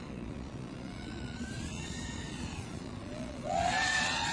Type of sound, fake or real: fake